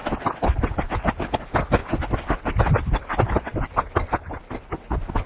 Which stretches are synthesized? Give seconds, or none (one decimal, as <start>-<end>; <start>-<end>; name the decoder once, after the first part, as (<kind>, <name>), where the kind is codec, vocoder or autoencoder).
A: none